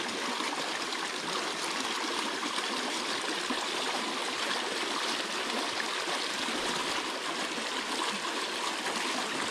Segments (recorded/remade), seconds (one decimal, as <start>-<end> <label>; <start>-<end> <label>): 0.0-9.5 recorded